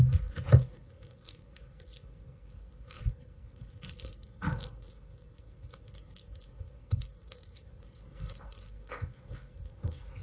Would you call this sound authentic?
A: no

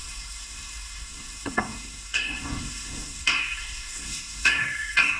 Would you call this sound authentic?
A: no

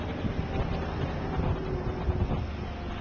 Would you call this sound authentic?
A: yes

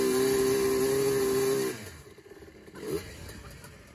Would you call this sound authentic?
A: yes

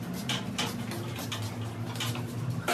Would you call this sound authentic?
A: yes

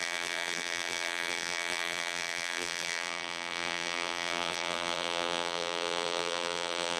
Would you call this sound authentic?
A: no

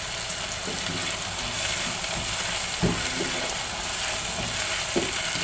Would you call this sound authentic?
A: yes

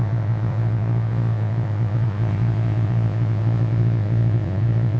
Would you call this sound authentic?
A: no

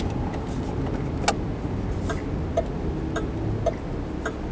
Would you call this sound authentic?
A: yes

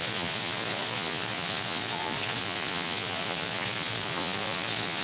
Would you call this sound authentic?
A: no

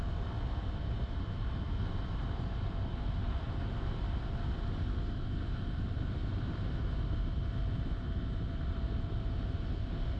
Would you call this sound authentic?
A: no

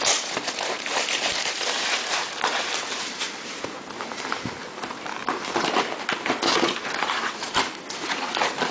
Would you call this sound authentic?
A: no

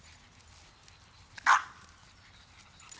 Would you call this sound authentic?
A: yes